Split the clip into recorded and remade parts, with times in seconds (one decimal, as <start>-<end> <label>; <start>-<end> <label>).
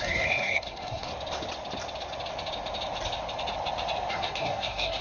0.0-1.1 remade; 1.1-4.1 recorded; 4.1-5.0 remade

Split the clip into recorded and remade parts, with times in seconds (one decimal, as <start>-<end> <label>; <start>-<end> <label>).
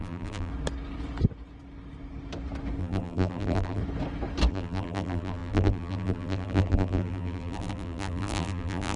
0.0-0.5 remade; 0.5-2.8 recorded; 2.8-3.8 remade; 3.8-4.5 recorded; 4.5-9.0 remade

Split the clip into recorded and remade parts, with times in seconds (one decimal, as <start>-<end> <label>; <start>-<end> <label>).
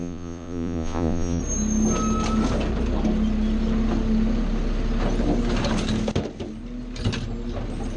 0.0-1.4 remade; 1.4-8.0 recorded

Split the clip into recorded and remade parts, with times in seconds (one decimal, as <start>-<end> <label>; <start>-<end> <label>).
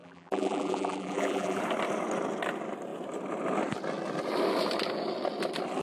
0.0-1.6 remade; 1.6-5.8 recorded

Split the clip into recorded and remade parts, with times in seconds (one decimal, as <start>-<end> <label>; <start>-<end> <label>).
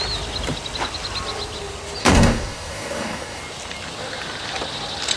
0.0-2.0 recorded; 2.0-3.4 remade; 3.4-5.2 recorded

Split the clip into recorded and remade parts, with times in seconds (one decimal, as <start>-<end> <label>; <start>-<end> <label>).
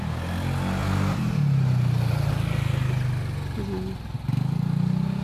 0.0-5.2 recorded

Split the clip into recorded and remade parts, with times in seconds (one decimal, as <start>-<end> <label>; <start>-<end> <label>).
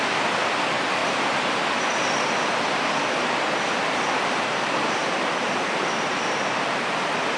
0.0-7.4 remade